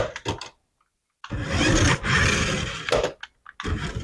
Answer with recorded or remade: recorded